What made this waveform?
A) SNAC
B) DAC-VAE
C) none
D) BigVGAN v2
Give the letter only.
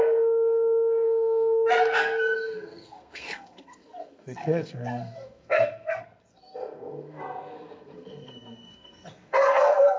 A